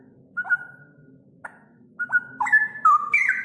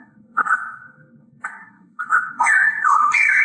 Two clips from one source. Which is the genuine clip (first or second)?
first